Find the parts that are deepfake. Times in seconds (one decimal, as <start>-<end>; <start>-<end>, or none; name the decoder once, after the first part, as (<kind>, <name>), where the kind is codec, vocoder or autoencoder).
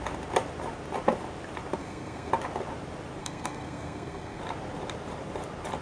1.8-2.3 (codec, SNAC); 3.2-4.4